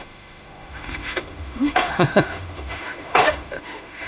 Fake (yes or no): yes